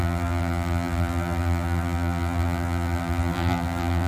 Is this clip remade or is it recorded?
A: remade